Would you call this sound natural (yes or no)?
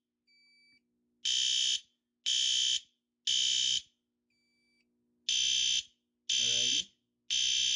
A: yes